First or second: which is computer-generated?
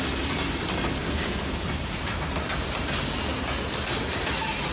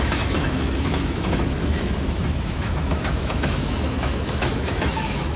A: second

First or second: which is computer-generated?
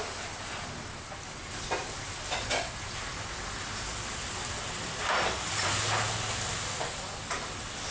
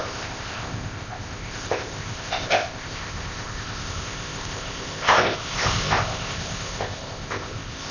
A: second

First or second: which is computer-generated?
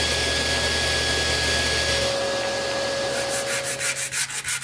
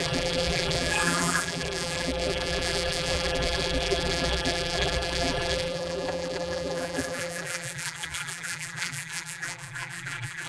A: second